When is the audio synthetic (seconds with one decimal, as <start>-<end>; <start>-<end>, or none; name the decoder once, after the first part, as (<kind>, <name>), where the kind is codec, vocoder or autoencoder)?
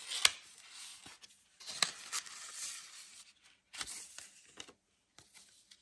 none